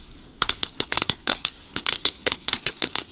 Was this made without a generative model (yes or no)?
no